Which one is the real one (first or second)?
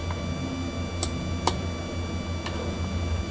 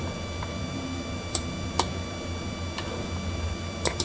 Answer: first